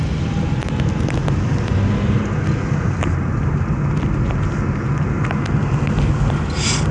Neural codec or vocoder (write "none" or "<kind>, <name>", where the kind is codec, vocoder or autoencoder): none